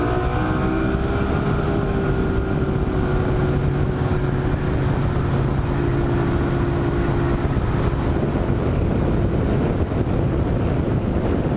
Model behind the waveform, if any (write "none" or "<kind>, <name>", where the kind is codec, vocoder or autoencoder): none